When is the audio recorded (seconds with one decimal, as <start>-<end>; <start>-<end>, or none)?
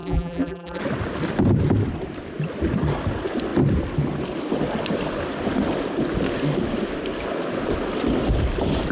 0.8-8.9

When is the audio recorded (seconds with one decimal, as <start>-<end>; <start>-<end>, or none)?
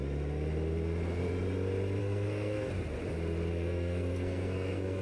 0.0-2.0; 2.7-3.5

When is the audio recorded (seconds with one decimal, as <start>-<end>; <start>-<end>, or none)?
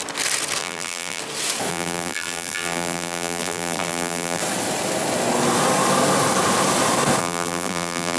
0.0-0.6; 1.2-1.7; 4.4-7.2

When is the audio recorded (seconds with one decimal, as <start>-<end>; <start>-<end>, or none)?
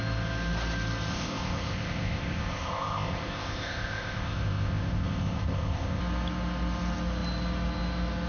0.0-1.1; 6.0-8.3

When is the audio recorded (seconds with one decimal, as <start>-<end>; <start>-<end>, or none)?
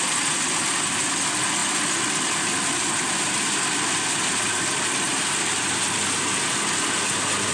0.0-1.6; 5.7-7.5